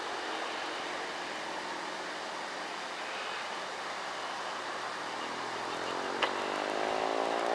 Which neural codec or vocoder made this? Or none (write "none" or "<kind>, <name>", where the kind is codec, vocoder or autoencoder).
none